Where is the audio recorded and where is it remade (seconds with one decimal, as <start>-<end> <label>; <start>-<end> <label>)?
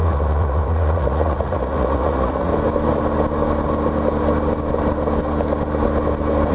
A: 0.0-2.5 remade; 2.5-6.5 recorded